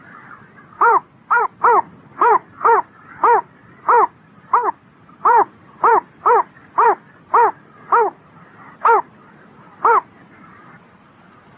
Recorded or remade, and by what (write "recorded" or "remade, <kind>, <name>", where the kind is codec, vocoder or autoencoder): remade, vocoder, BigVGAN v2